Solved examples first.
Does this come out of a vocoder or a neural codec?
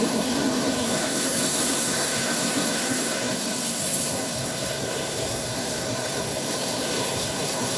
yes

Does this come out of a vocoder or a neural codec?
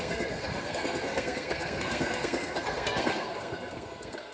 yes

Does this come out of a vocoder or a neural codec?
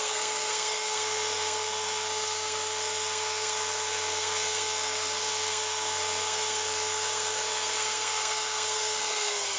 yes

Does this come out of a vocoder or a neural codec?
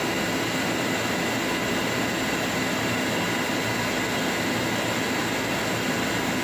no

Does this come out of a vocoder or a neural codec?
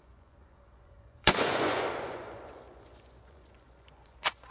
yes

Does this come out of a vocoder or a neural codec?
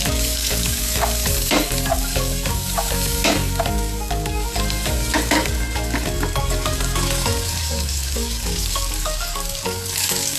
yes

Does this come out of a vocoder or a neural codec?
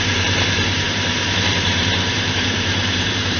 yes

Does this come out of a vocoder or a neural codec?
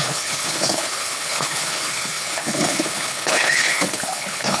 yes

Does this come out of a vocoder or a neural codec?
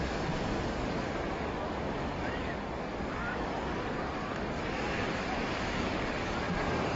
yes